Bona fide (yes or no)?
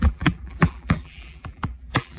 no